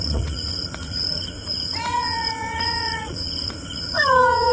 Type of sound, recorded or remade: remade